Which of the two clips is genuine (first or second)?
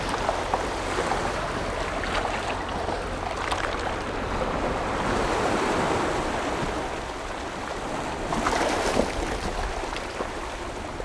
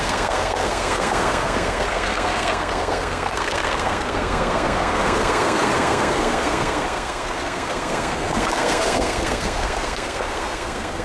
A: first